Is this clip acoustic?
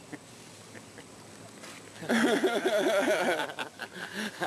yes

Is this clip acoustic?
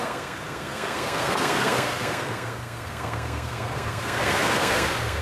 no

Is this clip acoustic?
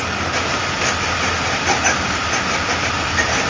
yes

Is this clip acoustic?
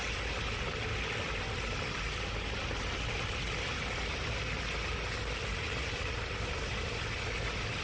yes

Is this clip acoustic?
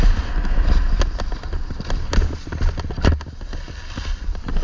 yes